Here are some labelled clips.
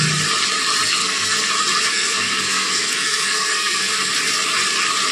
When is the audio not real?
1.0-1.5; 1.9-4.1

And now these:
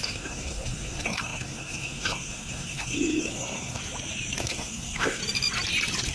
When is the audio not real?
0.0-3.8; 4.4-5.2

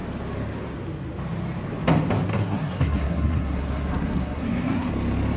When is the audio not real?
2.3-4.9

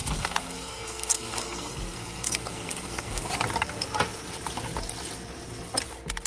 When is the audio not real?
0.0-3.3

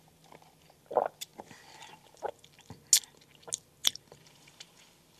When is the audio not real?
none